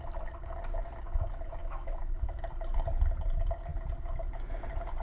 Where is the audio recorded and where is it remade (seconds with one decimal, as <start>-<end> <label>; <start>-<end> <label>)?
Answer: 0.0-1.6 recorded; 1.6-2.4 remade; 2.4-5.0 recorded